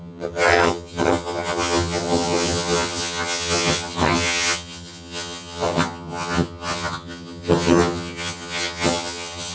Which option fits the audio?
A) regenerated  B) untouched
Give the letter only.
A